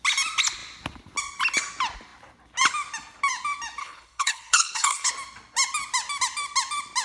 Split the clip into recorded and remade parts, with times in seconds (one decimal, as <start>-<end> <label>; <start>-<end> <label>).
0.0-3.8 recorded; 3.8-5.1 remade; 5.1-7.0 recorded